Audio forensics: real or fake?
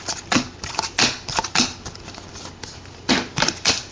real